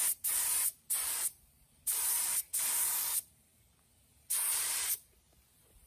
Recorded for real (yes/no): no